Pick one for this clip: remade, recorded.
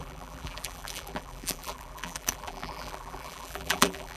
remade